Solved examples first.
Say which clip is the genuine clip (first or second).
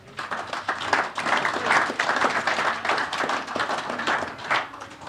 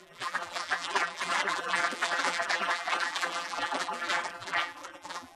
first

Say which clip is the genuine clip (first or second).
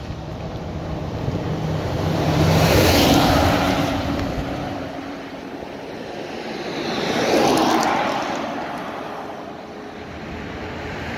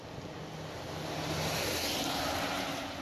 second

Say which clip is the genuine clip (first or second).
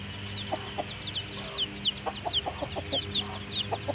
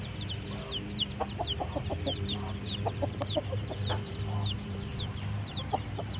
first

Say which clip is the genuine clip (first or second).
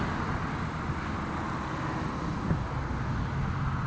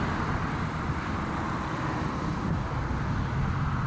first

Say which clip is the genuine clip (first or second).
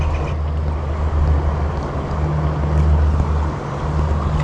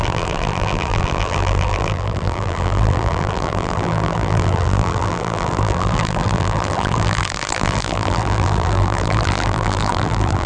first